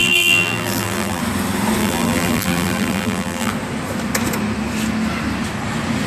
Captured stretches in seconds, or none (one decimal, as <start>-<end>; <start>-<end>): 1.2-1.8; 3.5-6.1